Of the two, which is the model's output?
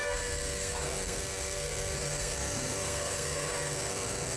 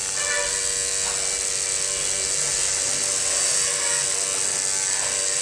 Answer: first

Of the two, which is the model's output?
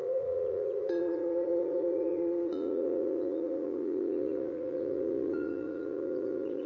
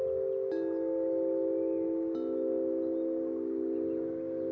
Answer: first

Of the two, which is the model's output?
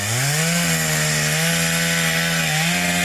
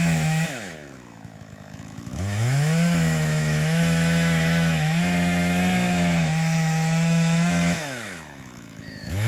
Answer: second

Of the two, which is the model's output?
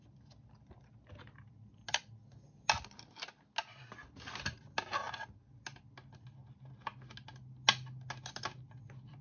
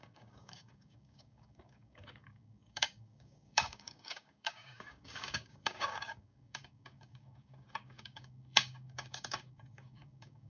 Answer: second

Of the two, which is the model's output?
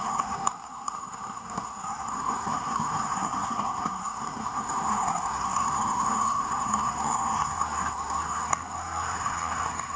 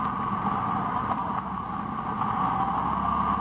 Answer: first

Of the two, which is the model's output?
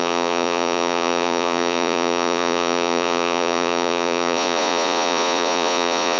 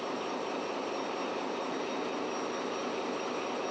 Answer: first